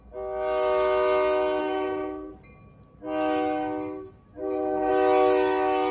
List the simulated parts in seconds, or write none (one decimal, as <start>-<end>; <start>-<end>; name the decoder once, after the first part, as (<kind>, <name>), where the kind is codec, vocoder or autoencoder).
1.6-2.3 (codec, SNAC); 4.4-4.9